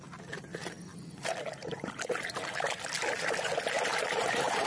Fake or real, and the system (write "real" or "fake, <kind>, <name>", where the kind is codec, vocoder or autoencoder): fake, vocoder, BigVGAN v2